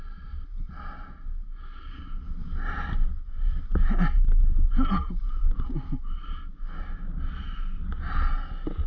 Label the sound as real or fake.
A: real